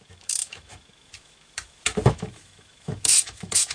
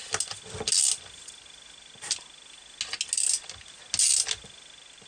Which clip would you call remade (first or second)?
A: first